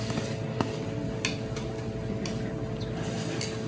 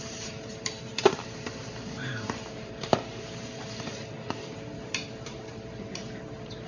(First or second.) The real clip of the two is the first